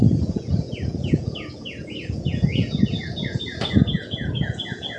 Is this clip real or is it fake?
fake